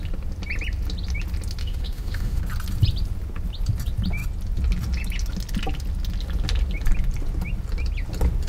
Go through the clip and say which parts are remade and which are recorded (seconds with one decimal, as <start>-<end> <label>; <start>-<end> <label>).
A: 0.0-1.6 recorded; 1.6-2.4 remade; 2.4-8.5 recorded